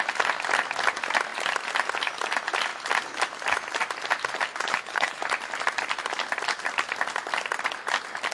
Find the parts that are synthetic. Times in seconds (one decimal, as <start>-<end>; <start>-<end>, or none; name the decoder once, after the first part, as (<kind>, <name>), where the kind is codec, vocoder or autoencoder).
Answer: 4.7-5.2 (codec, HILCodec)